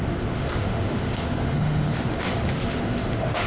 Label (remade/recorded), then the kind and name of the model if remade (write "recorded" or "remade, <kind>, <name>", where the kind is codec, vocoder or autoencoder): remade, autoencoder, DAC-VAE